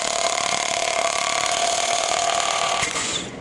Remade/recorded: remade